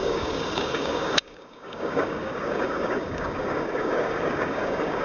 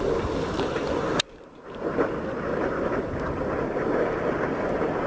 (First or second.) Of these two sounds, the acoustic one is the second